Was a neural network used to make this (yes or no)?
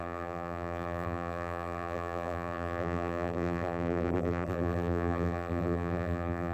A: yes